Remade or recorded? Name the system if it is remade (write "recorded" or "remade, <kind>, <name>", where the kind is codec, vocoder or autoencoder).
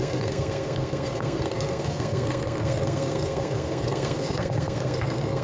remade, codec, SNAC